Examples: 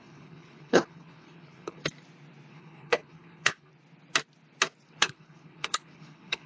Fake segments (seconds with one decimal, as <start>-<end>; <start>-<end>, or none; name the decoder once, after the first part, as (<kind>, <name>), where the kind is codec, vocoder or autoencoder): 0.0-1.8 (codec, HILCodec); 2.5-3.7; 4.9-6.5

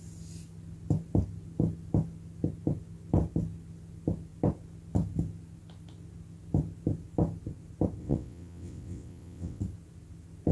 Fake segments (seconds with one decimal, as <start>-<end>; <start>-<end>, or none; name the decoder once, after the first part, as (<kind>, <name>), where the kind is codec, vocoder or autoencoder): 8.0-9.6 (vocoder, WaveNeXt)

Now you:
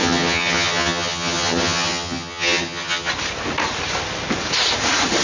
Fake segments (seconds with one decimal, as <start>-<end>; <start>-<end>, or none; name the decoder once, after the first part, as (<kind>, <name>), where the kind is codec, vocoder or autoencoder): 0.0-3.1 (vocoder, HiFi-GAN)

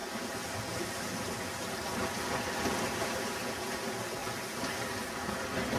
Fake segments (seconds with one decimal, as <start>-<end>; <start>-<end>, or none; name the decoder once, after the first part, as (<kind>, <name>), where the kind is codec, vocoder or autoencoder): none

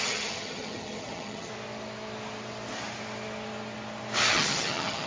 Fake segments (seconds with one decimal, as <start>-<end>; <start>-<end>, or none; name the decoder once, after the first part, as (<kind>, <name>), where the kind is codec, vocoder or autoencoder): 0.0-1.5 (vocoder, HiFi-GAN); 4.3-5.1